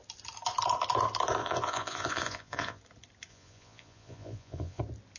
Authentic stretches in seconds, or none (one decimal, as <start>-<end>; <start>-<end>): 0.0-1.4; 2.8-3.3; 4.8-5.2